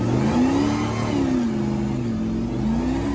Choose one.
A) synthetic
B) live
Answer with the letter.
B